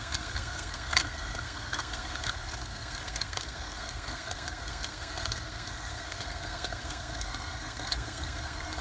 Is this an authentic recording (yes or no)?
no